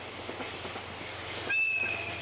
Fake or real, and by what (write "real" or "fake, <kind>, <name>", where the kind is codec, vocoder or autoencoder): real